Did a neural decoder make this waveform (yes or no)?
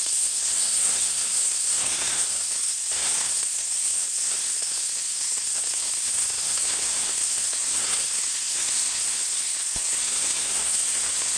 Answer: yes